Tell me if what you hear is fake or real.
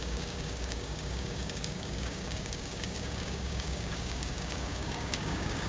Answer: fake